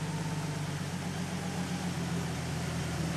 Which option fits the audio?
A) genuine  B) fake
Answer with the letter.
A